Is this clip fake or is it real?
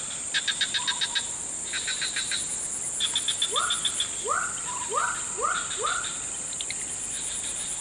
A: real